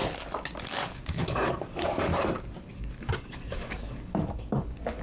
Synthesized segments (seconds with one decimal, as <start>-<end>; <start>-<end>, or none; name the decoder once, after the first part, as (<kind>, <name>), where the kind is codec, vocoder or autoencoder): 0.6-2.1 (codec, DAC); 2.8-5.0